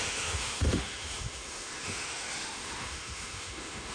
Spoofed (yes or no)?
yes